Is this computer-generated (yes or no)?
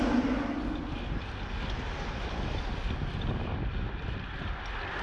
no